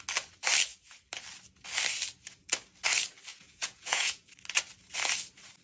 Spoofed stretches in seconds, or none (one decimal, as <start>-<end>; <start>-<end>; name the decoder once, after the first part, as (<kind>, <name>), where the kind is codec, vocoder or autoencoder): 3.3-4.3 (vocoder, Vocos)